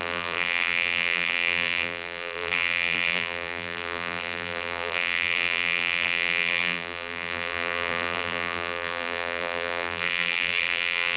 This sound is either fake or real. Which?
fake